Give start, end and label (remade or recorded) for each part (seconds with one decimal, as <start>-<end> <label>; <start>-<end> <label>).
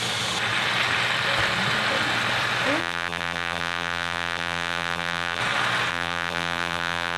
0.0-2.8 recorded; 2.8-5.4 remade; 5.4-5.9 recorded; 5.9-7.2 remade